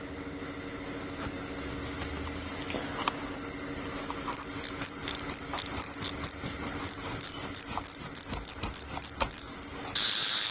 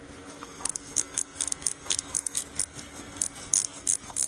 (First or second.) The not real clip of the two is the second